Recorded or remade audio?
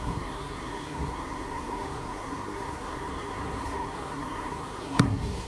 remade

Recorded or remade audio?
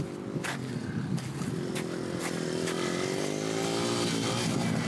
recorded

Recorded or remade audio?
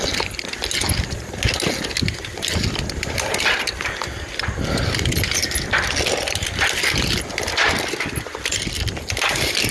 recorded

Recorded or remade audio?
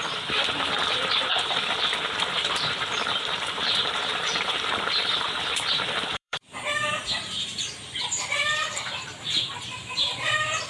remade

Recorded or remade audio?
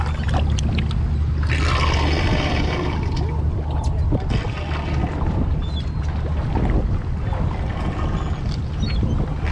recorded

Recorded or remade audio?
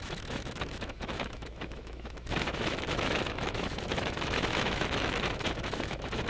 remade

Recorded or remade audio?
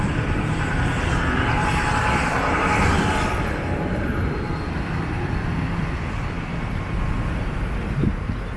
recorded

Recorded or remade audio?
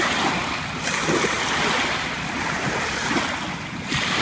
recorded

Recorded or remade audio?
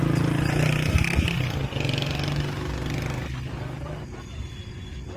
recorded